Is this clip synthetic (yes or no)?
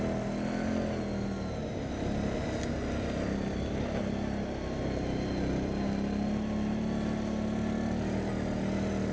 no